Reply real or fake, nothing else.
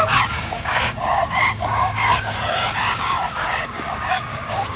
fake